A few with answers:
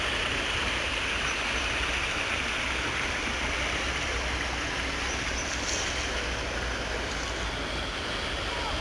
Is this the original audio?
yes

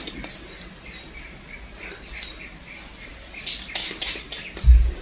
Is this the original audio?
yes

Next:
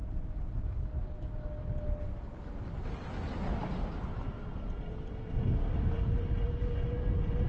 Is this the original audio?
yes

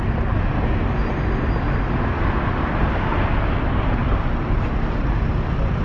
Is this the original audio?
yes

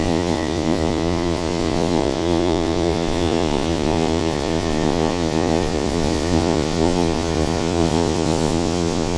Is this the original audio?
no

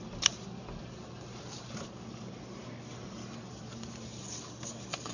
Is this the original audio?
yes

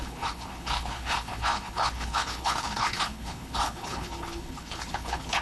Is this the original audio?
no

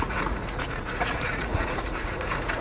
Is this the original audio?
no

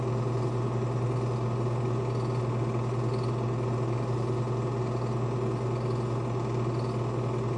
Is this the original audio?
yes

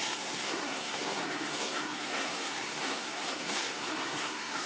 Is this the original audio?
no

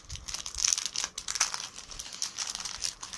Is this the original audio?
yes